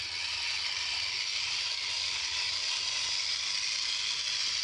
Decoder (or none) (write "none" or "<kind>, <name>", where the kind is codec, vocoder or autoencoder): none